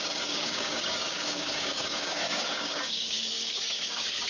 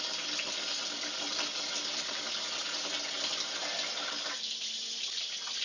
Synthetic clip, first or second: first